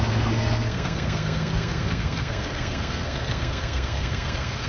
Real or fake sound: fake